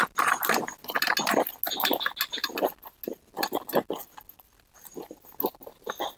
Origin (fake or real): real